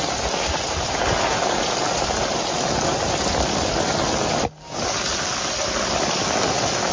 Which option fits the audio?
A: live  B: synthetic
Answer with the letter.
A